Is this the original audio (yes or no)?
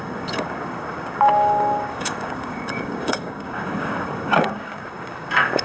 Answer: no